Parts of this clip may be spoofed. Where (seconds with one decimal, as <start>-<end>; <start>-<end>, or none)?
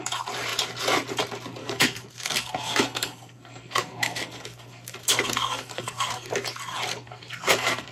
1.6-6.3; 6.9-7.9